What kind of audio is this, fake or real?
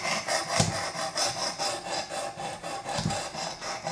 real